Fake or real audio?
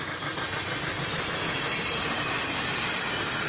real